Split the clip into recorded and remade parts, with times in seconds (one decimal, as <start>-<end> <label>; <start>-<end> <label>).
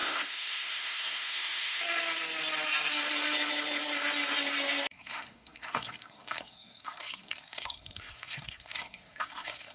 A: 0.0-1.8 remade; 1.8-4.9 recorded; 4.9-9.7 remade